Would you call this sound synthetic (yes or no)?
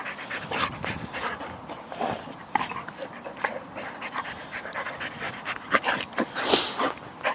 yes